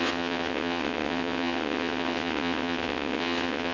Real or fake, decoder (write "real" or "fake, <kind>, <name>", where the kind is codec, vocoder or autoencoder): fake, vocoder, WaveNeXt